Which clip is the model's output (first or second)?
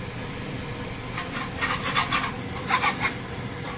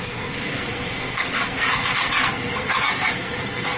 second